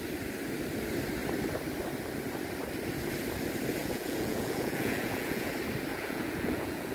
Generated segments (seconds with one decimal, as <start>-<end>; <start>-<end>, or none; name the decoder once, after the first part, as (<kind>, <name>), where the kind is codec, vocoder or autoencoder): 3.8-5.5 (vocoder, Vocos); 5.9-6.9